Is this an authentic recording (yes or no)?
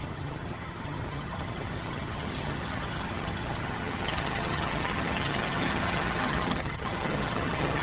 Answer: no